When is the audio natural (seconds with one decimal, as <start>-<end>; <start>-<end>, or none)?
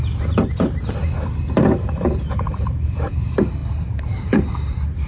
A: none